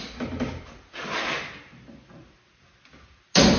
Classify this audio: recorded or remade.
recorded